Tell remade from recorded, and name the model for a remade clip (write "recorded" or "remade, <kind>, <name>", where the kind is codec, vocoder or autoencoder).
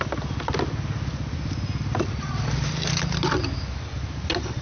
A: recorded